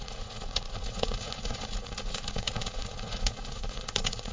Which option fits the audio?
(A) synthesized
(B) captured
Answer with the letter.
A